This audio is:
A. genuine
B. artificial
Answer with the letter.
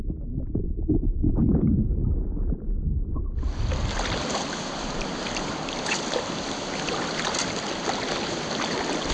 A